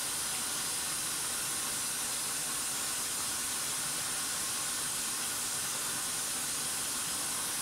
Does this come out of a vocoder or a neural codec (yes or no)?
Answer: no